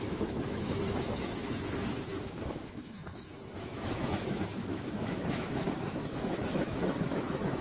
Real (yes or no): no